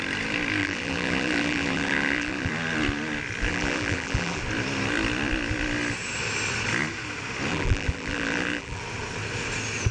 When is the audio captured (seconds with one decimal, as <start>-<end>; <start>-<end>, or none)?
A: 0.0-0.6; 2.5-3.5; 4.4-7.5; 8.8-9.9